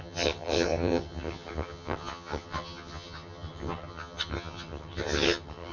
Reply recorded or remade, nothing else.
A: remade